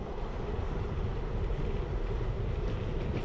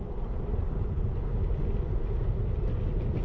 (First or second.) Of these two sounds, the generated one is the first